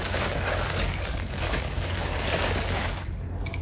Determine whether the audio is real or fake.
fake